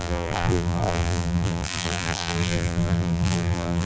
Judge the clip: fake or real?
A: fake